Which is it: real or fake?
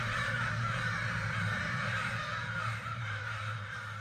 fake